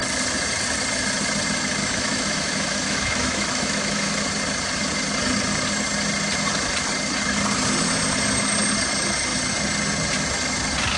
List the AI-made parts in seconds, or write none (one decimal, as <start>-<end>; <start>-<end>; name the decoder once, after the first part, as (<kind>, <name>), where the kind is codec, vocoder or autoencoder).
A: 1.8-4.2 (autoencoder, DAC-VAE)